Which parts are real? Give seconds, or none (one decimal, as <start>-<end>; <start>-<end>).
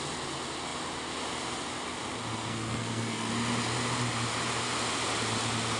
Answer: 0.0-2.3; 3.3-5.8